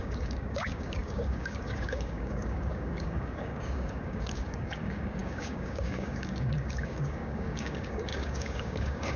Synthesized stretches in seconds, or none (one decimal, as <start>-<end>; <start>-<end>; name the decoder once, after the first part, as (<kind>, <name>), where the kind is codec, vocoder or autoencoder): 0.0-9.2 (codec, DAC)